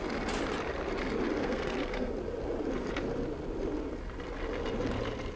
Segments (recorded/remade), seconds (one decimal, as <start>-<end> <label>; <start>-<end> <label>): 0.0-1.4 recorded; 1.4-2.1 remade; 2.1-5.4 recorded